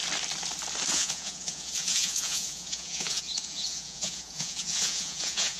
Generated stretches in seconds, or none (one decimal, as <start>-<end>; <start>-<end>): 0.9-5.6